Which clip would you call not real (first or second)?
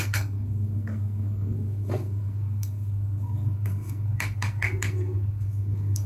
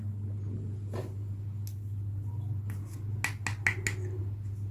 first